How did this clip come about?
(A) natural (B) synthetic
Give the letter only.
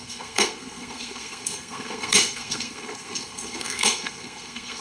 B